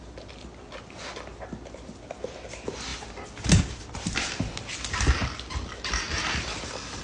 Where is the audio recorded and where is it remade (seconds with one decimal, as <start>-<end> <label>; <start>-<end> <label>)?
0.0-2.9 recorded; 2.9-3.6 remade; 3.6-7.0 recorded